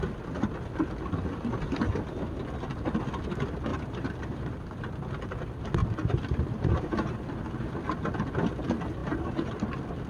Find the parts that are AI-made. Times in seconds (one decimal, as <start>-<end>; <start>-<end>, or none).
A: 3.7-4.7; 5.8-7.7; 9.0-9.6